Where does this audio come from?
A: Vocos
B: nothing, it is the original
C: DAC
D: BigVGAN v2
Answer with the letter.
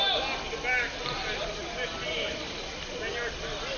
B